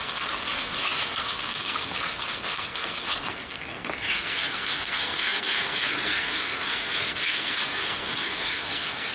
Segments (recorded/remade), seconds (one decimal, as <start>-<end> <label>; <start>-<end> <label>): 0.0-9.1 remade